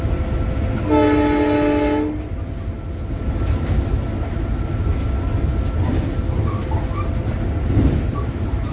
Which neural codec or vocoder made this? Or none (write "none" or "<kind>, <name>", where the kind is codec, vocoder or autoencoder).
none